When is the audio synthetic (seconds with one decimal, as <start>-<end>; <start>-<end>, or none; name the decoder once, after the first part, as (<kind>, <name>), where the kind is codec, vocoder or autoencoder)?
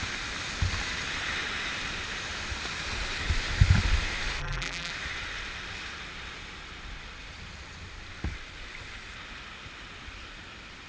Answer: 4.4-4.9 (vocoder, BigVGAN v2)